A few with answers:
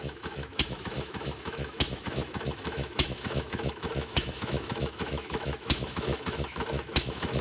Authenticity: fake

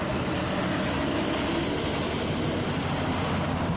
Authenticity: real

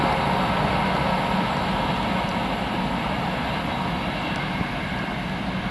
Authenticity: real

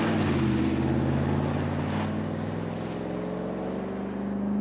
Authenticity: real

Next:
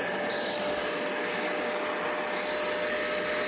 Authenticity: real